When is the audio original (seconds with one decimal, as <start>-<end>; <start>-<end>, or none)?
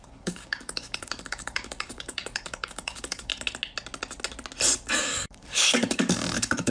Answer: 3.3-5.0